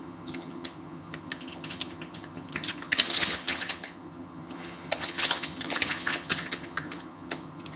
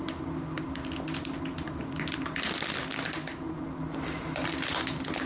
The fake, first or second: first